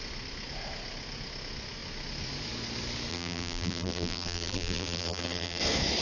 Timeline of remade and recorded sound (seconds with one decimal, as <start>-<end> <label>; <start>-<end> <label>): 0.0-3.1 recorded; 3.1-5.6 remade; 5.6-6.0 recorded